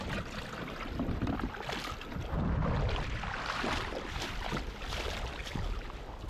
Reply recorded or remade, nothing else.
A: recorded